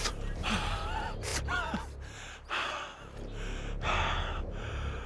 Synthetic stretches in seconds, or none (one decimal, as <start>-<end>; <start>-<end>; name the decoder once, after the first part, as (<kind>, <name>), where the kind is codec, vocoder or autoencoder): 0.0-1.3 (vocoder, BigVGAN v2); 4.4-5.1